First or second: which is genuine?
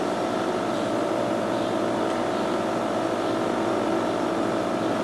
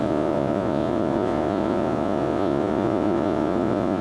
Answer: first